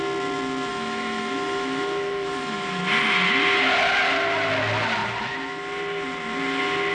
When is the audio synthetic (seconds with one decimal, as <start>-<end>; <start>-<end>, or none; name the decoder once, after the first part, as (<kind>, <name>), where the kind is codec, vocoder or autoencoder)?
0.7-2.8 (autoencoder, DAC-VAE)